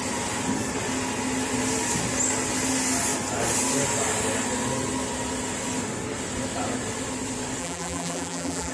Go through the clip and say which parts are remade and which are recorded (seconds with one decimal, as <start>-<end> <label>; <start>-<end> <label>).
0.0-7.6 recorded; 7.6-8.7 remade